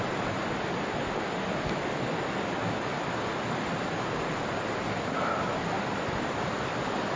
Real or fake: real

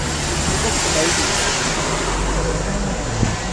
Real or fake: real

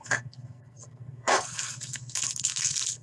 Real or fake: fake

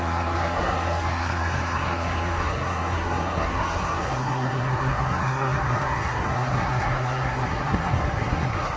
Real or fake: fake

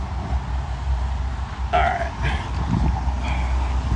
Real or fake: real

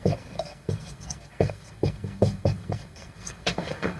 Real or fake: fake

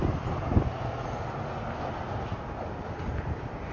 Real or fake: real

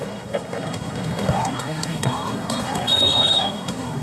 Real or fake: fake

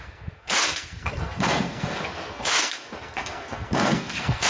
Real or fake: fake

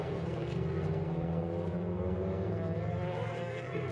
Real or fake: fake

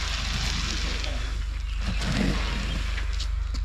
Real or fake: real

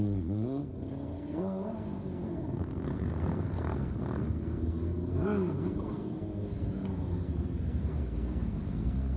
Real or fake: fake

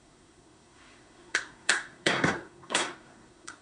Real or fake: fake